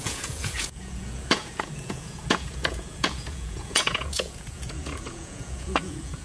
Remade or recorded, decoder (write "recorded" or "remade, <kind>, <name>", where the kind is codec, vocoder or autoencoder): remade, vocoder, Vocos